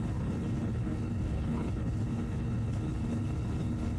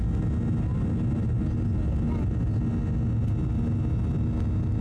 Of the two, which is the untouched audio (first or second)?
second